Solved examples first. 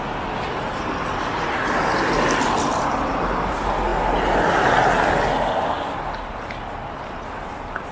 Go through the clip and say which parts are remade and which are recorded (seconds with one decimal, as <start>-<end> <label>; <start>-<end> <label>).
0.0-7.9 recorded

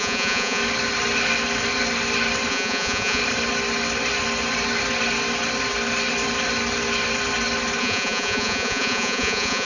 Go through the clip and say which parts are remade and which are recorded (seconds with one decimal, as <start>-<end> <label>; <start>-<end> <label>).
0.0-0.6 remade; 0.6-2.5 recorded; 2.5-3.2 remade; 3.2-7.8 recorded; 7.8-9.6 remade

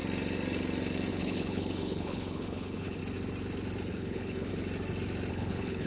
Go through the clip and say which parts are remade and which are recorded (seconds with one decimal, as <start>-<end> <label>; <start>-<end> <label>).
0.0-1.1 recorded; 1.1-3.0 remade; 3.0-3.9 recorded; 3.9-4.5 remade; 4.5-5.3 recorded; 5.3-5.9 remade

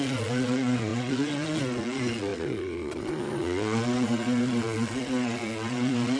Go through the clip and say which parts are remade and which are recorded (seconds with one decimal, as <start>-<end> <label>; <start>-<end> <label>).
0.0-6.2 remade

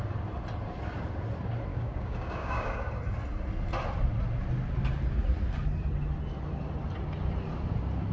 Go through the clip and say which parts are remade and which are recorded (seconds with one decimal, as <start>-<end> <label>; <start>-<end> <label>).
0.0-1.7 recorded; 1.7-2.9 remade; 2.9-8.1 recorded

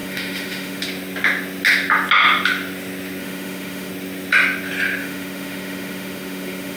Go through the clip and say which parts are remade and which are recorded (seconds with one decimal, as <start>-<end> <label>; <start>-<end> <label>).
0.0-0.8 remade; 0.8-3.2 recorded; 3.2-3.9 remade; 3.9-5.0 recorded; 5.0-6.8 remade

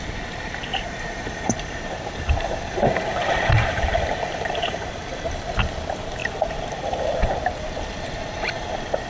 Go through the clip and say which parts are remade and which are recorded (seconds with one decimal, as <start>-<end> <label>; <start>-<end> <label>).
0.0-0.7 recorded; 0.7-4.9 remade; 4.9-9.1 recorded

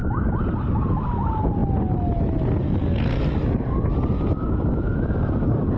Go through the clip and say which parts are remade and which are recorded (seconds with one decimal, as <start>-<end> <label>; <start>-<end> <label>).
0.0-0.6 recorded; 0.6-1.6 remade; 1.6-5.1 recorded; 5.1-5.8 remade